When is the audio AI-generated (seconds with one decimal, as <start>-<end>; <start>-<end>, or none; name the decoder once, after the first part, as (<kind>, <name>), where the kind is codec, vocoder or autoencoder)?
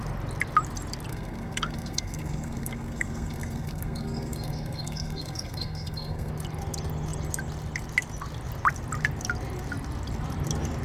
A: 1.1-6.3 (codec, SNAC)